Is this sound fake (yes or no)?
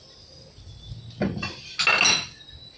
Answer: no